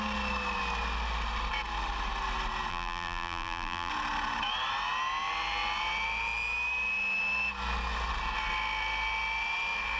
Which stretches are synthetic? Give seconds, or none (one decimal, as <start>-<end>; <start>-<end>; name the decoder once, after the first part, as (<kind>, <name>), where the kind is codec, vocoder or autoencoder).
2.7-3.9 (vocoder, BigVGAN v2)